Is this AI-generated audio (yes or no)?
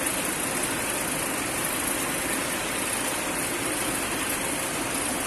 no